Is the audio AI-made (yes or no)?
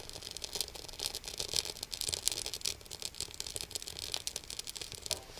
no